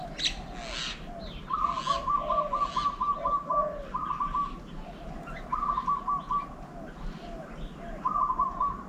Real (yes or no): yes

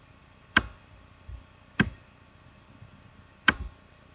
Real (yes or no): no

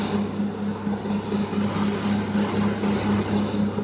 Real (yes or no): yes